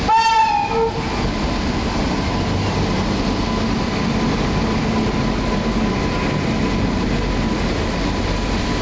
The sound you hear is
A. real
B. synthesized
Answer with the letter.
A